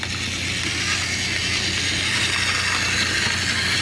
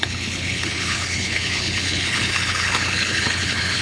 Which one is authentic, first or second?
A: first